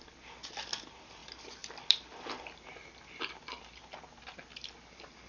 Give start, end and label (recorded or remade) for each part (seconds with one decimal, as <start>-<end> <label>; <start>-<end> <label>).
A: 0.0-5.3 recorded